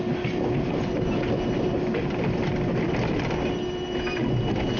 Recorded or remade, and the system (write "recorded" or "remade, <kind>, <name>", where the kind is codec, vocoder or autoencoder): recorded